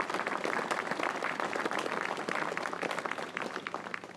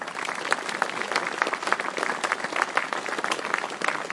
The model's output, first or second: first